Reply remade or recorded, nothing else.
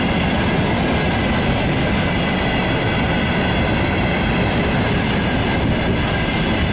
recorded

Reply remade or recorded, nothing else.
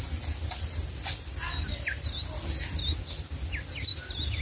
recorded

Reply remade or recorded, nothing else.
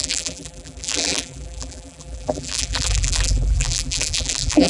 remade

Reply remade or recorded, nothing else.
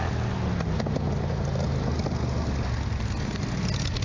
recorded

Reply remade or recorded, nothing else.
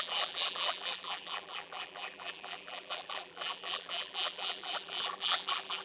remade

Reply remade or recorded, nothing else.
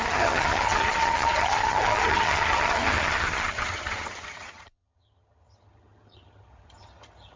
remade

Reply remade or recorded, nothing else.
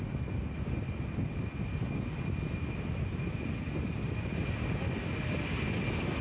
recorded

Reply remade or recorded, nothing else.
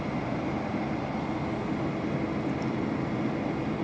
recorded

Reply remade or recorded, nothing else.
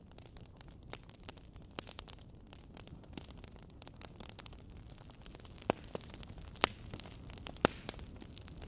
remade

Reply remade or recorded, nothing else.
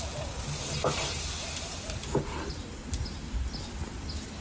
recorded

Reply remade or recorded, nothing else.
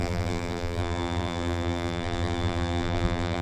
remade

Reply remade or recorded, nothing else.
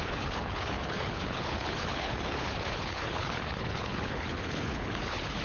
remade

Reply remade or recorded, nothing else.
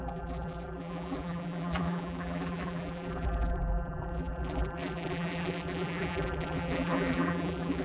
remade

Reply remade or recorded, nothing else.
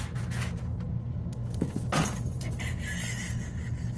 recorded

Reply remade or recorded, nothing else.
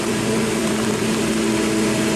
remade